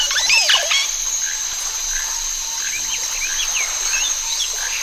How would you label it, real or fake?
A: real